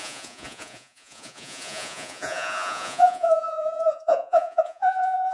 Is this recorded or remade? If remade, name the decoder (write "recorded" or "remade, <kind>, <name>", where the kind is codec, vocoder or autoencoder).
remade, vocoder, Vocos